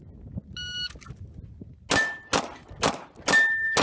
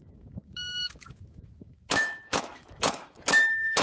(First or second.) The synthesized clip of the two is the second